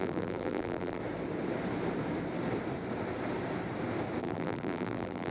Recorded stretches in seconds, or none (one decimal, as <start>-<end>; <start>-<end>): 1.0-4.2